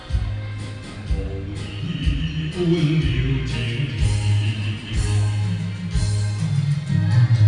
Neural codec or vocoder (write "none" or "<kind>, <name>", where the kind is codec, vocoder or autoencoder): none